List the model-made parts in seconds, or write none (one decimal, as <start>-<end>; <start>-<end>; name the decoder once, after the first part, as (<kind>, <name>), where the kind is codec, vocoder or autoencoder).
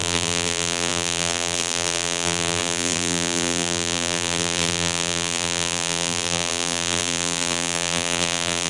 0.0-8.7 (vocoder, BigVGAN v2)